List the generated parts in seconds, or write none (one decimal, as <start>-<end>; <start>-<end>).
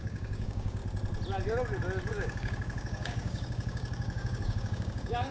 0.0-0.8; 2.1-5.3